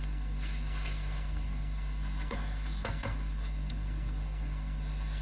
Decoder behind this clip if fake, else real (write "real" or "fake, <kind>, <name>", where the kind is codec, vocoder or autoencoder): fake, codec, SNAC